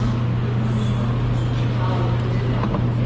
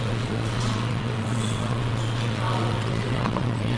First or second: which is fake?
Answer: second